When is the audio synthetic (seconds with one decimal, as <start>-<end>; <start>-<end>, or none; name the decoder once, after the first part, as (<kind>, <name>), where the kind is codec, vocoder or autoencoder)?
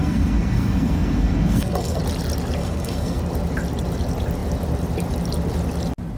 0.0-2.0 (codec, SNAC); 2.6-3.2